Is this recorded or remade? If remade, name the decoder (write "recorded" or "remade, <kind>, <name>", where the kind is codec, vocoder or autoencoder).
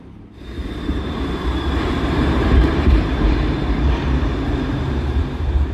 remade, vocoder, BigVGAN v2